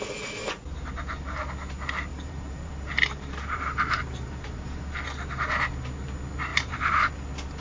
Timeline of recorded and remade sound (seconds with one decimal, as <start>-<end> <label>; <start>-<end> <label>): 0.0-2.1 recorded; 2.1-4.9 remade; 4.9-6.5 recorded; 6.5-7.1 remade; 7.1-7.6 recorded

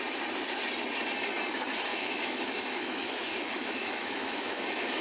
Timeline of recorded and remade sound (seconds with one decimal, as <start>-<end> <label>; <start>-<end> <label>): 0.0-1.9 recorded; 1.9-5.0 remade